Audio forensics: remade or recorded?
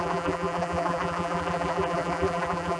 remade